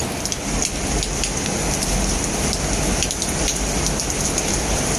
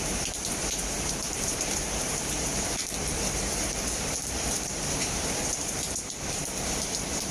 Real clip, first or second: first